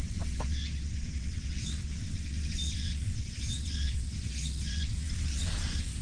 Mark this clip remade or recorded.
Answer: remade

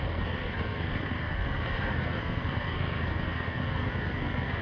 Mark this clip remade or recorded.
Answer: remade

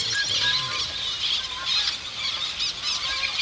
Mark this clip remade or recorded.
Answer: recorded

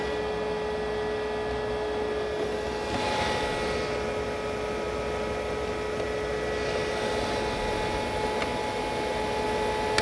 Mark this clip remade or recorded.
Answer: recorded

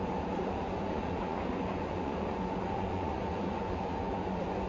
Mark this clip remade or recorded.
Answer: remade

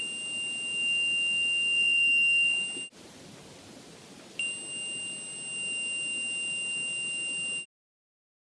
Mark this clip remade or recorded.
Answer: recorded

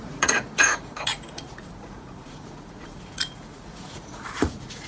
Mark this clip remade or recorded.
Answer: remade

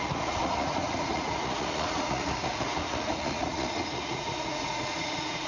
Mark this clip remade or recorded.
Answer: remade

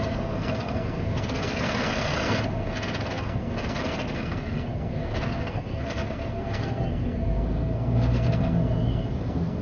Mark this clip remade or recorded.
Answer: remade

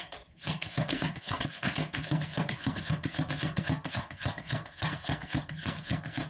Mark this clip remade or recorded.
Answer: remade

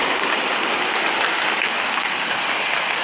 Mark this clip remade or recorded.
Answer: recorded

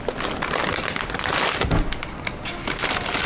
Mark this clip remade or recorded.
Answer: recorded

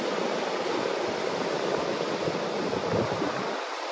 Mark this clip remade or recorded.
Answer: remade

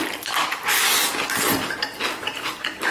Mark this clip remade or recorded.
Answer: recorded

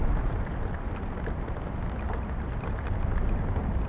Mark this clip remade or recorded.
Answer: recorded